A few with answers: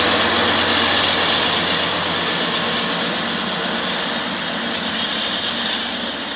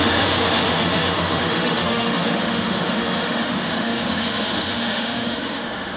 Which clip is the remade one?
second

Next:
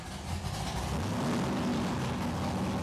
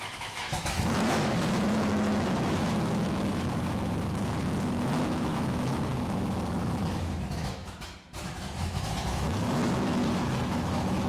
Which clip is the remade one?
second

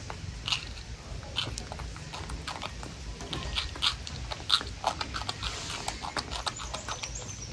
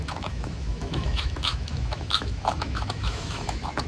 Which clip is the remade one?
second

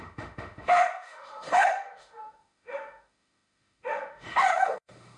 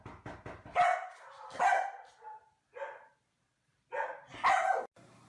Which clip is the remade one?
first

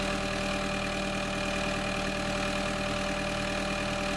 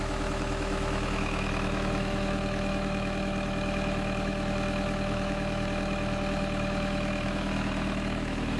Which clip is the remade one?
second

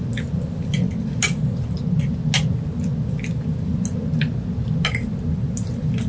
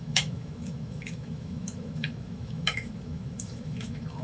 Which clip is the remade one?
second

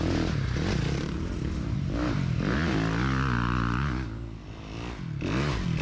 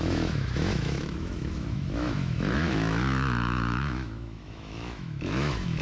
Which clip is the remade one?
second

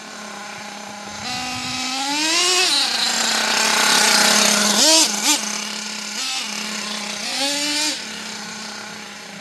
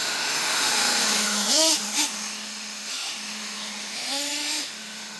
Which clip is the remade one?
second